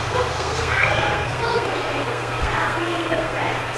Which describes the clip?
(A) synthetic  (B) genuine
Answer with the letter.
A